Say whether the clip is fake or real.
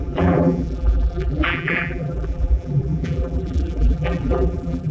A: fake